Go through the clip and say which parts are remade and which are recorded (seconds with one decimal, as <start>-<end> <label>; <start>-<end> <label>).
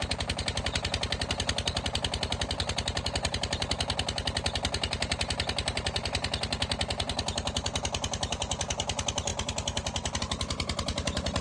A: 0.0-11.4 recorded